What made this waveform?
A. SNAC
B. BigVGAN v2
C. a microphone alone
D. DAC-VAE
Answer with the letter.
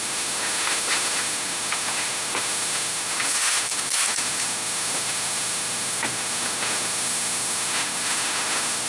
D